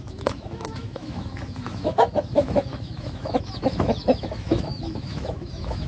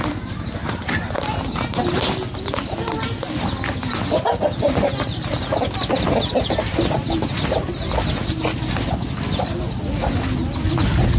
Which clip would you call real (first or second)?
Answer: second